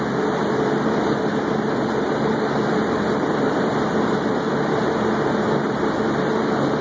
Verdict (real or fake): fake